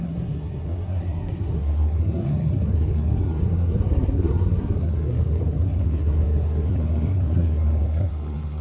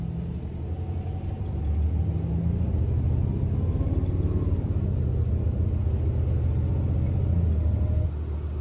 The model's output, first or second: first